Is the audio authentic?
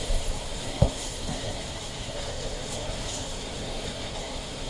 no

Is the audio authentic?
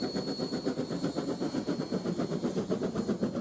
yes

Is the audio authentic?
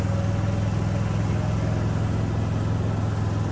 yes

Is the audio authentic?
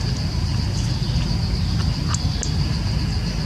yes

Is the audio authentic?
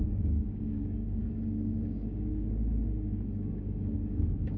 no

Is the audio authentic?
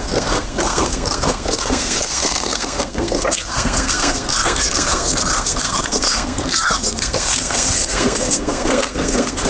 no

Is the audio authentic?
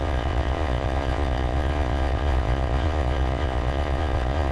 no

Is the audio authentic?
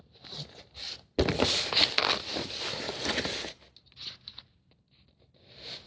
yes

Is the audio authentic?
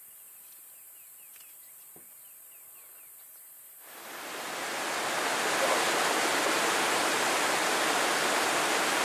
yes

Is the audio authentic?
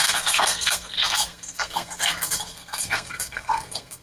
no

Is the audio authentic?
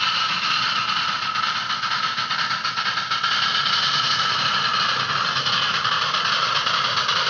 yes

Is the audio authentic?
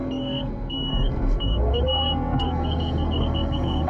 no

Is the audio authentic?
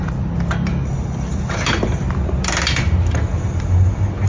yes